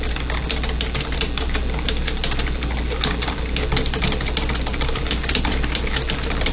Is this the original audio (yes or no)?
yes